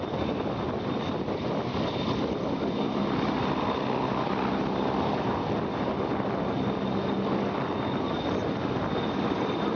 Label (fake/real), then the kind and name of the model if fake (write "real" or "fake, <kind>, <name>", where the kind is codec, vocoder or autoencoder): real